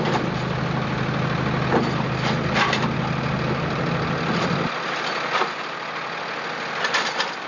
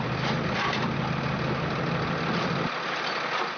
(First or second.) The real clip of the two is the first